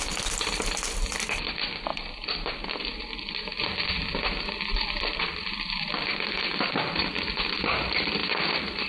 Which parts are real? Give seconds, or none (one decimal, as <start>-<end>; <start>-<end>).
none